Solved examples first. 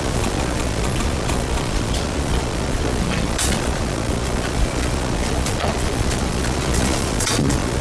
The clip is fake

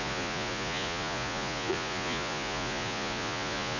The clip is fake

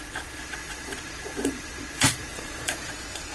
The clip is fake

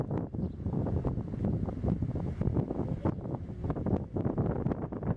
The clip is real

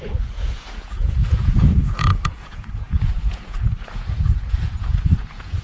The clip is fake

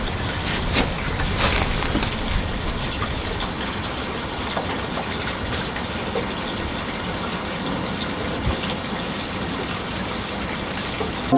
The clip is real